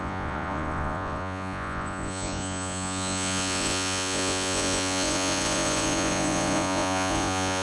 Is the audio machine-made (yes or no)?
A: yes